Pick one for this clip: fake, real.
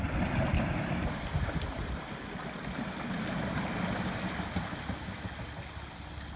real